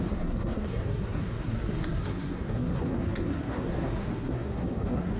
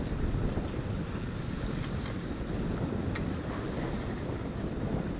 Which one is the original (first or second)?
second